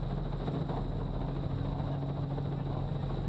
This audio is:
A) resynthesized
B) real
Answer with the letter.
B